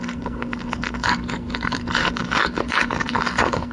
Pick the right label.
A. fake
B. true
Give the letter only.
A